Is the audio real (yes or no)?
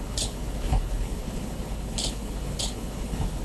no